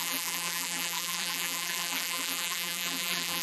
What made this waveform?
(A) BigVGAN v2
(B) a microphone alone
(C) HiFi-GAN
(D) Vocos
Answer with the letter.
A